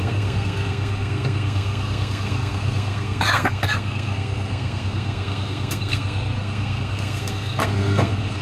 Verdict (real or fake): fake